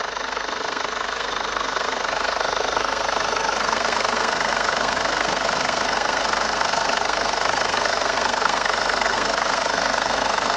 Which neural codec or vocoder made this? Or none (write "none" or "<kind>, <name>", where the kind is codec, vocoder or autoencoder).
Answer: codec, SNAC